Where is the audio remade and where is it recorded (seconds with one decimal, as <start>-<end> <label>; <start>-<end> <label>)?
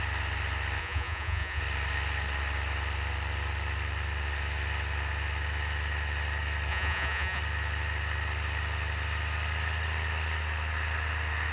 0.0-0.8 recorded; 0.8-1.6 remade; 1.6-6.7 recorded; 6.7-7.4 remade; 7.4-11.5 recorded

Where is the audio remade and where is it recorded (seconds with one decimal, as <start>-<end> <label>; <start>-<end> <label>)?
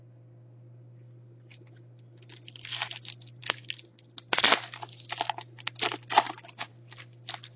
0.0-7.6 recorded